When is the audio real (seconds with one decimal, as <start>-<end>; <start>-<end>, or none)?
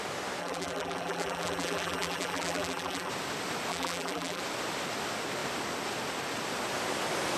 0.0-0.4; 3.1-3.7; 4.4-7.4